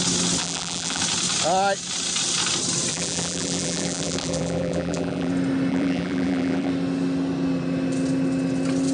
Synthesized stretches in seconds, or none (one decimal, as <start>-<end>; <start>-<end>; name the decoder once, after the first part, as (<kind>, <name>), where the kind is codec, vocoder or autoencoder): 0.4-1.0 (vocoder, BigVGAN v2); 2.9-5.3; 5.7-6.7